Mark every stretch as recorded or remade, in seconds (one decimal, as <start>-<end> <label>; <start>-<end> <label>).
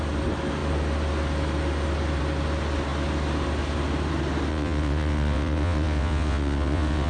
0.0-4.5 recorded; 4.5-7.1 remade